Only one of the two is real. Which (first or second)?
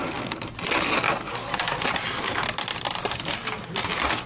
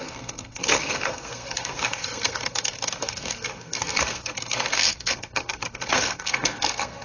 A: first